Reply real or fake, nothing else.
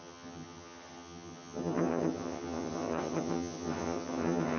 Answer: fake